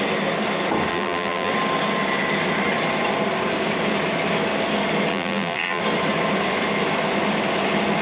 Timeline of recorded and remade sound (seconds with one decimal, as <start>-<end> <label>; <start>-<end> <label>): 0.0-0.9 recorded; 0.9-1.5 remade; 1.5-5.1 recorded; 5.1-5.8 remade; 5.8-8.0 recorded